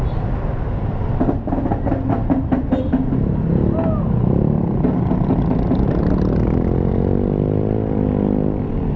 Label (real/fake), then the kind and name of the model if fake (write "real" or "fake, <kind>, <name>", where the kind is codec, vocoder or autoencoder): real